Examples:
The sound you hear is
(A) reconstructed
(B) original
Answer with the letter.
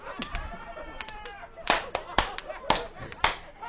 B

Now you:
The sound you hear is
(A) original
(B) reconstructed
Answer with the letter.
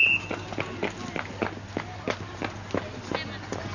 A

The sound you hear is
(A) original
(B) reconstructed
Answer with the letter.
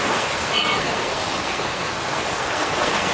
B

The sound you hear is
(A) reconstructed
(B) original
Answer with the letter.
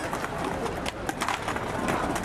B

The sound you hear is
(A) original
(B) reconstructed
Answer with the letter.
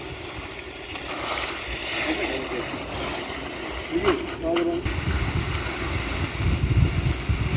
A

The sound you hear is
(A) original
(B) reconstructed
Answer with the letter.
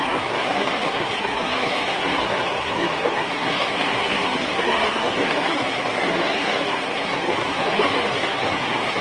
B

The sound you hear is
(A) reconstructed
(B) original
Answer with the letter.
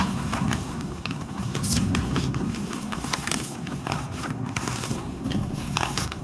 A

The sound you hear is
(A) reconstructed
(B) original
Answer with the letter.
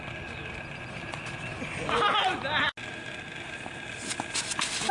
B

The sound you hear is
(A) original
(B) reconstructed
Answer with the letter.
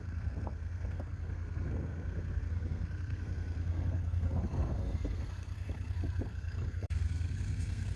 B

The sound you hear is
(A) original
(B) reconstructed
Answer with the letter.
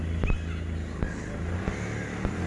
A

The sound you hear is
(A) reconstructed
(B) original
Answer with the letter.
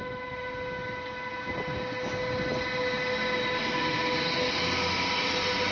B